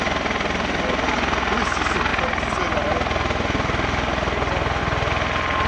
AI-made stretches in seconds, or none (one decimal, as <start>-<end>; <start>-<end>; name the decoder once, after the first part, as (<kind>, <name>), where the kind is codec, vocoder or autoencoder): none